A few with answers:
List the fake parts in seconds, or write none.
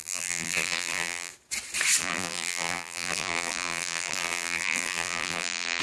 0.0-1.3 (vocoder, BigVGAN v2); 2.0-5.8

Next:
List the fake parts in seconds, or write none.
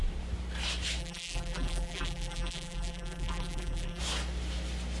1.0-4.0 (vocoder, BigVGAN v2)